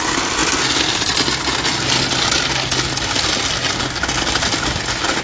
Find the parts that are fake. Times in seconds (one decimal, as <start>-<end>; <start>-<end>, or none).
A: none